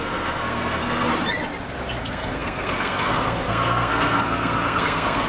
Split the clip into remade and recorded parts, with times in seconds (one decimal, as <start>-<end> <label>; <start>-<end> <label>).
0.0-1.1 remade; 1.1-2.0 recorded; 2.0-5.3 remade